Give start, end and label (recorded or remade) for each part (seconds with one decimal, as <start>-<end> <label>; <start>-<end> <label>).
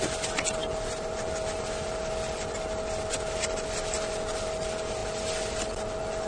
0.0-6.3 recorded